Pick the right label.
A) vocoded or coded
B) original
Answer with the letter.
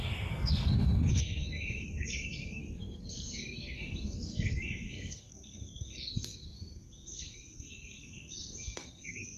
A